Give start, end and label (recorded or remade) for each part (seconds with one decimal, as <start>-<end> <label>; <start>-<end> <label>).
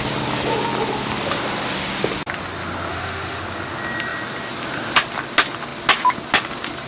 0.0-2.9 recorded; 2.9-3.4 remade; 3.4-6.9 recorded